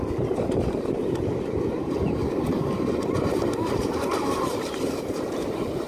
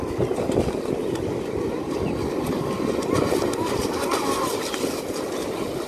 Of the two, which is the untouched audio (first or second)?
second